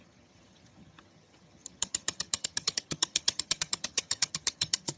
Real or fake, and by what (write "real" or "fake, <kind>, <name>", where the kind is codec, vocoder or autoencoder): fake, vocoder, HiFi-GAN